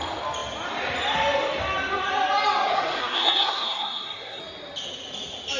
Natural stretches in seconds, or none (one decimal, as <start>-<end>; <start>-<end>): 0.0-2.7; 4.4-5.6